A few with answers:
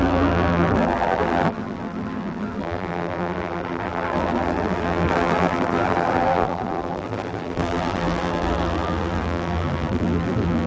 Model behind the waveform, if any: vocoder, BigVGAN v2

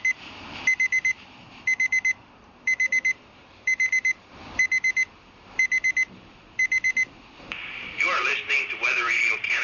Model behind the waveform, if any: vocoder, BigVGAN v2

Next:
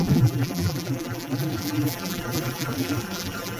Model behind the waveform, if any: vocoder, BigVGAN v2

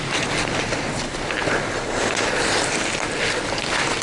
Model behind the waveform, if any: none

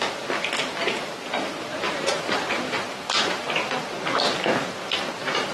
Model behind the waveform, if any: vocoder, BigVGAN v2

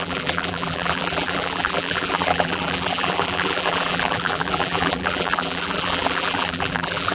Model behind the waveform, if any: vocoder, BigVGAN v2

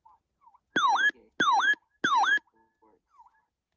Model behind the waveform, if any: none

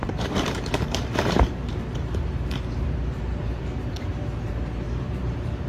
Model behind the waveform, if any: vocoder, BigVGAN v2